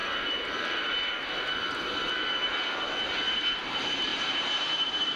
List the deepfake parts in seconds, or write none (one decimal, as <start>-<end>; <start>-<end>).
0.0-2.5; 3.1-5.2